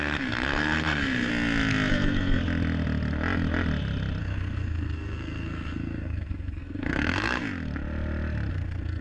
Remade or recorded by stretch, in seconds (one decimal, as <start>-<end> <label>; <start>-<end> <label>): 0.0-1.3 remade; 1.3-1.9 recorded; 1.9-2.4 remade; 2.4-4.2 recorded; 4.2-7.4 remade; 7.4-8.5 recorded; 8.5-9.0 remade